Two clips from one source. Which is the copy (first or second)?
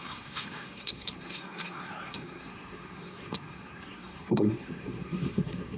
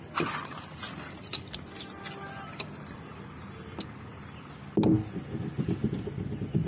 first